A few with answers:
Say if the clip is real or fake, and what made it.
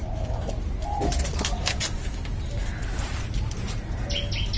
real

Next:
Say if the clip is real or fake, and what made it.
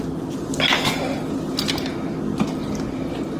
real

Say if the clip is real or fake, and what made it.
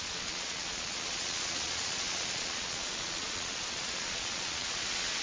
fake, vocoder, Vocos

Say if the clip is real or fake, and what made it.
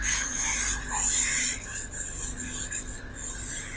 real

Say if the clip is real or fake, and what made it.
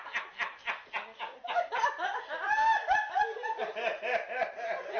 real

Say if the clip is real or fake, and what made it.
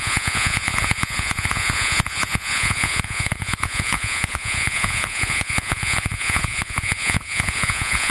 fake, vocoder, Vocos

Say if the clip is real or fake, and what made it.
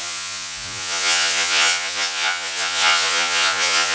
fake, vocoder, Vocos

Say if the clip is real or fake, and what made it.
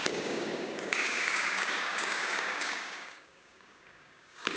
fake, codec, DAC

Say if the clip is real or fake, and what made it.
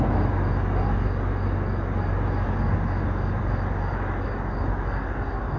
real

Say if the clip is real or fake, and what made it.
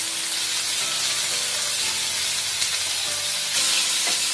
real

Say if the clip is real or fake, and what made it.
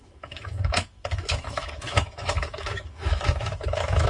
fake, autoencoder, DAC-VAE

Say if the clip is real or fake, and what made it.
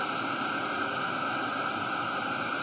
real